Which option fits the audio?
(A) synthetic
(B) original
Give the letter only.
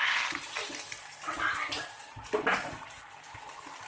B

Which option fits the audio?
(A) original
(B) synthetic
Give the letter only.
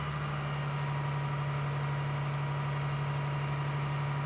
A